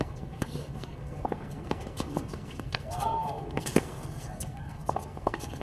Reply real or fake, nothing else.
fake